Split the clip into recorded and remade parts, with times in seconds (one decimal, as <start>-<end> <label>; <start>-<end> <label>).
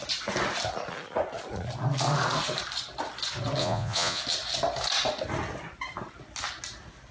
0.0-3.6 recorded; 3.6-4.2 remade; 4.2-7.1 recorded